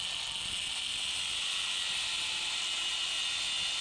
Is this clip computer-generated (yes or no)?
no